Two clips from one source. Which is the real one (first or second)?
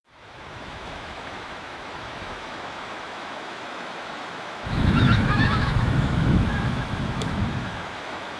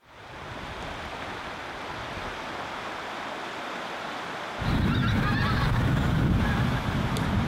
second